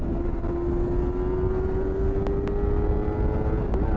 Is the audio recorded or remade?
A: recorded